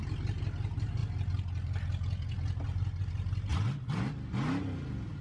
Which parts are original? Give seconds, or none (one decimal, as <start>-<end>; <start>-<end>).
0.0-5.2